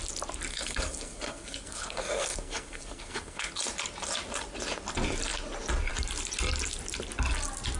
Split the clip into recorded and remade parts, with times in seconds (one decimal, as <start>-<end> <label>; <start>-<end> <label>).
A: 0.0-0.5 recorded; 0.5-3.5 remade; 3.5-7.8 recorded